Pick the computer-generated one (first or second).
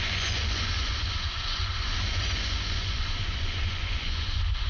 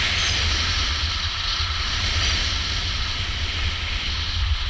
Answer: first